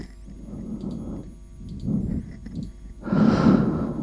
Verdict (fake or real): real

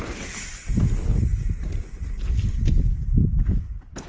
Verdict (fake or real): real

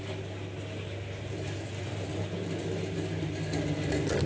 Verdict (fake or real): real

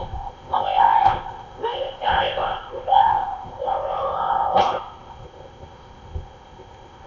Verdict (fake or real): fake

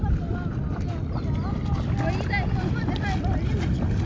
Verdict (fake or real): real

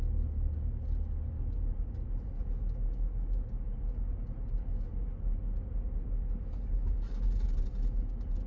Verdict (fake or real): real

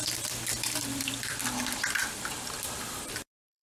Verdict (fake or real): fake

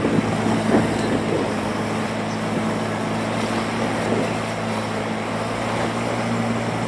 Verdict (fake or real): real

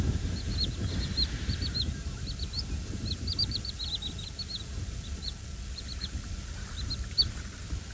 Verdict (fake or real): real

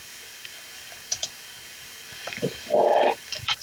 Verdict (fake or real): fake